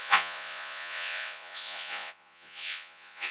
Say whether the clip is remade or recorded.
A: remade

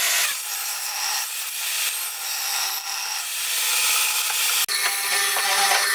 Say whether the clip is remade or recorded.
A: recorded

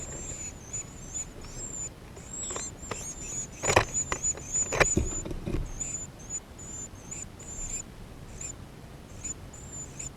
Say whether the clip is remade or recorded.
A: recorded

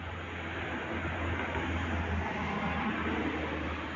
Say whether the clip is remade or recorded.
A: recorded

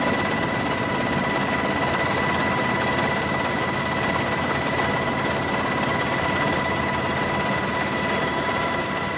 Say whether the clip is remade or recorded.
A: recorded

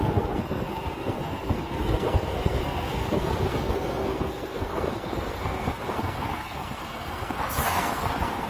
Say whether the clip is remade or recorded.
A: remade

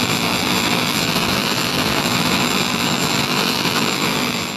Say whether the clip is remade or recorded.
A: remade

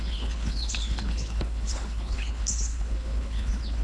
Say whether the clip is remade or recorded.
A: remade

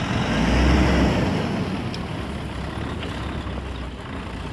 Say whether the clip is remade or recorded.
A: recorded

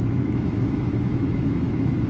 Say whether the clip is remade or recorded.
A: remade